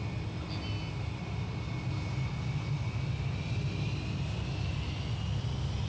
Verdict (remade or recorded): recorded